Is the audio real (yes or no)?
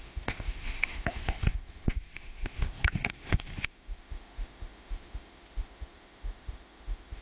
no